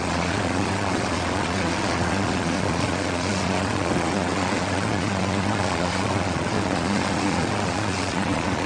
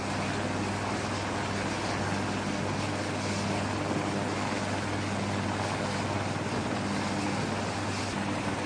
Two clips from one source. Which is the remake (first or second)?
first